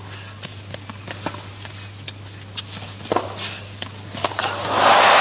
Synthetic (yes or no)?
no